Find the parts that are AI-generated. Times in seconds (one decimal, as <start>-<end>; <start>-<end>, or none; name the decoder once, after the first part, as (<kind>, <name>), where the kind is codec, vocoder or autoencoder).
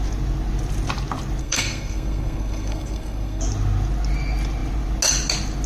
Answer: 1.4-3.4 (codec, SNAC)